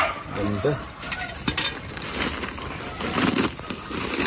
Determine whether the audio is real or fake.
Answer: real